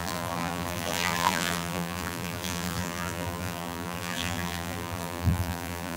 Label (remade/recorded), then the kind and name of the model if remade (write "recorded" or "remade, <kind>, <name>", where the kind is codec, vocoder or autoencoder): remade, vocoder, BigVGAN v2